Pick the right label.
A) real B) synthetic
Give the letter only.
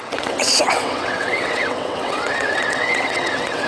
B